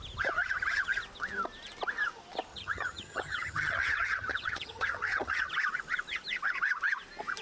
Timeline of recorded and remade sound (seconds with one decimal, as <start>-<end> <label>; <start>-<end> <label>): 0.0-2.5 recorded; 2.5-5.5 remade; 5.5-7.4 recorded

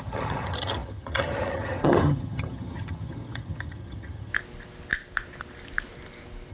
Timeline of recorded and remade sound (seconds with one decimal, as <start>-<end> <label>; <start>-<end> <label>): 0.0-4.3 remade; 4.3-6.5 recorded

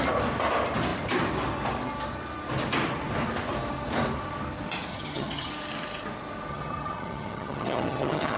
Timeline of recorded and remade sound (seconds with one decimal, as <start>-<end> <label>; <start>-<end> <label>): 0.0-4.9 recorded; 4.9-5.5 remade; 5.5-6.5 recorded; 6.5-8.4 remade

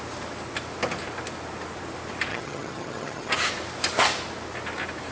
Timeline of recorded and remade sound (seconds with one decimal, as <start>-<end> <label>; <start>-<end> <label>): 0.0-2.3 recorded; 2.3-3.3 remade; 3.3-5.1 recorded

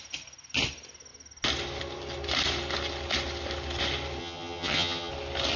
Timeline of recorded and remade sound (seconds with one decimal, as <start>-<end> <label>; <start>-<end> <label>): 0.0-4.2 recorded; 4.2-5.1 remade; 5.1-5.6 recorded

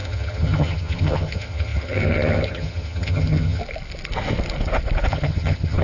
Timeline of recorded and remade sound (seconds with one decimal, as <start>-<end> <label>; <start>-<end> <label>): 0.0-3.6 remade; 3.6-5.1 recorded; 5.1-5.8 remade

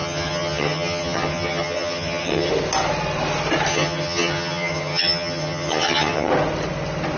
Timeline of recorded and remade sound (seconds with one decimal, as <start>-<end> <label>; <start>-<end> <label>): 0.0-2.5 remade; 2.5-3.7 recorded; 3.7-6.3 remade; 6.3-7.2 recorded